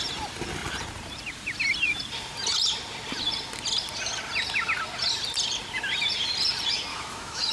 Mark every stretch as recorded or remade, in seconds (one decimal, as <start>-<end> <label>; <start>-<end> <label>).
0.0-6.9 recorded; 6.9-7.5 remade